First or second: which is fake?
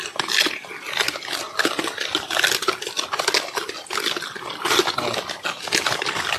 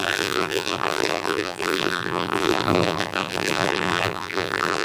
second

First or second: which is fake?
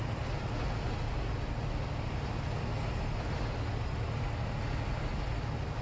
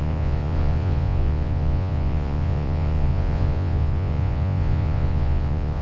second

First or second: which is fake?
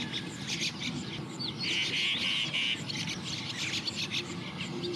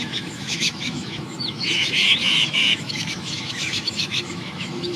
second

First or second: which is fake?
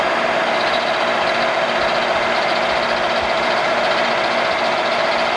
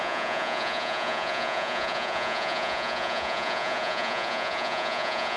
second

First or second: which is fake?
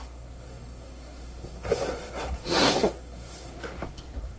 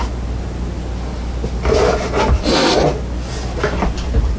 first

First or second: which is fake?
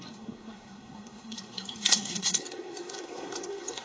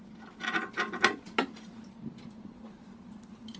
first